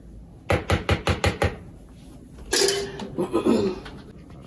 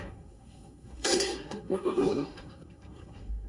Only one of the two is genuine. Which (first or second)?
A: first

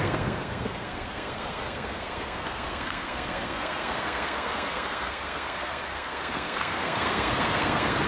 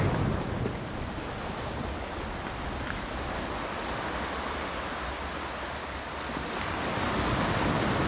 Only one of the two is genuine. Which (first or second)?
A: second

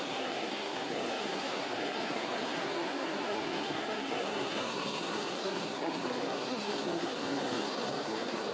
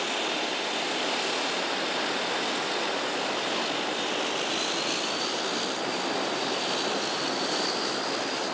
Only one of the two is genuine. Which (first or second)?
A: second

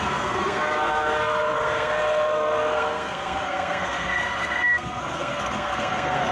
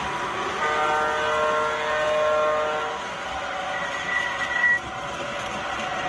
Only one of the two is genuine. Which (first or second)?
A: second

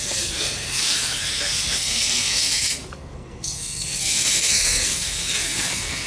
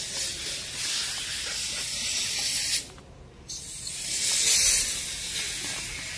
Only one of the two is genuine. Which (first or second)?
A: second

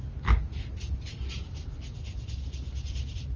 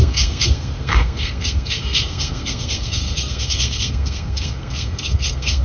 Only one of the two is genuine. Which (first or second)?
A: first